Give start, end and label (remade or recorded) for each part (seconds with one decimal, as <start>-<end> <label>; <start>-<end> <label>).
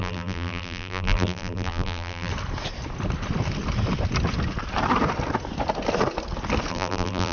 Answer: 0.0-2.3 remade; 2.3-6.7 recorded; 6.7-7.3 remade